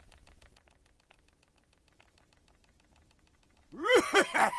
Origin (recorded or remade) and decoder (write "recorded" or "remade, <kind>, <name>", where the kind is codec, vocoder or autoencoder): remade, vocoder, BigVGAN v2